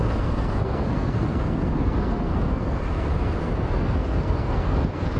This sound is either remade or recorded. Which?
remade